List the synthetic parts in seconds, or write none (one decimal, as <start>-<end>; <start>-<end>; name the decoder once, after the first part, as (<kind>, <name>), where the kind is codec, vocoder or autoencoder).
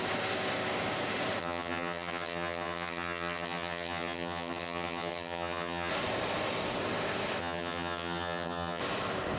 1.4-5.9 (vocoder, HiFi-GAN); 7.4-8.8